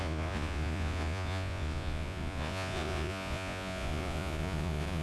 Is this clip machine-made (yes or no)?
yes